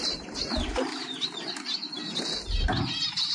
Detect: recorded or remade remade